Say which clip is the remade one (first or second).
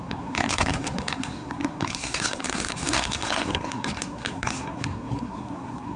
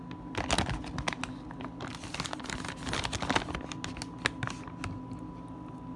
first